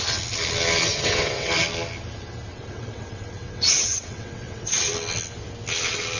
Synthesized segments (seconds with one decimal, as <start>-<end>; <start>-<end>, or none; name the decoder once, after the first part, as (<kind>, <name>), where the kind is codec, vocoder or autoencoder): 0.9-1.5 (vocoder, WaveNeXt); 2.5-4.9

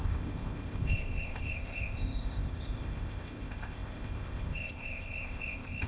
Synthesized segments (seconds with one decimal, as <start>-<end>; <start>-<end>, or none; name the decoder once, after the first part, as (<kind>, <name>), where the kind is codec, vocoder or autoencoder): 0.0-5.9 (codec, ZipCodec)

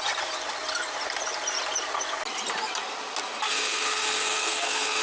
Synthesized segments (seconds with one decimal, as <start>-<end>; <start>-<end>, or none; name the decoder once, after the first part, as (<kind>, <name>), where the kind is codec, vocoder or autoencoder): 3.5-5.0 (codec, SNAC)

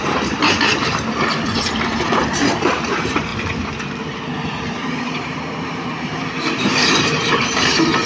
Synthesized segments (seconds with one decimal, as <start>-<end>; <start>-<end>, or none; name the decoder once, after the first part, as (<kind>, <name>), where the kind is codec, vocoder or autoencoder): 0.0-8.1 (vocoder, BigVGAN v2)

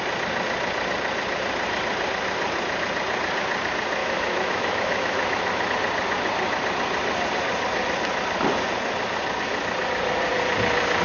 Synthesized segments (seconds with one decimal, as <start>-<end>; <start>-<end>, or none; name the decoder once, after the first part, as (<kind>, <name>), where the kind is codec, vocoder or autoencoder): 4.0-5.7 (autoencoder, DAC-VAE)